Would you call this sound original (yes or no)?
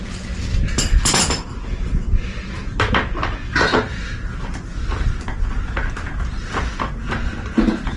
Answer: yes